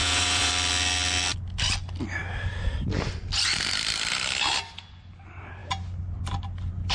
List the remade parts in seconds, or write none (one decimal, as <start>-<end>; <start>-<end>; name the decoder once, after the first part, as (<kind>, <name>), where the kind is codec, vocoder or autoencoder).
0.0-0.5 (vocoder, Vocos)